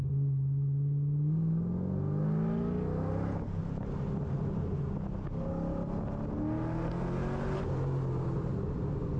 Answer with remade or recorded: recorded